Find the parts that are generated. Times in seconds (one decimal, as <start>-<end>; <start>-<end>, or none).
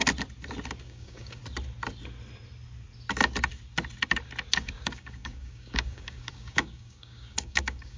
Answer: 0.8-1.4; 4.6-8.0